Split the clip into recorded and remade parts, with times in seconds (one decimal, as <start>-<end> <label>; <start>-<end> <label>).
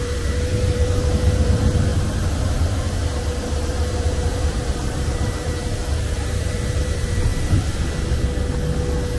0.0-7.3 remade; 7.3-9.2 recorded